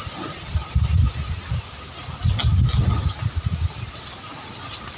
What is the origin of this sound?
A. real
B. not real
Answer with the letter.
A